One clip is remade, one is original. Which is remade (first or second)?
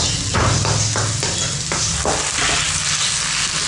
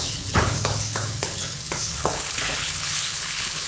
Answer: second